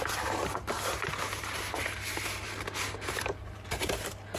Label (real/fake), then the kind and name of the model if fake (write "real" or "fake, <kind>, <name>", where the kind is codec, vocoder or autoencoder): real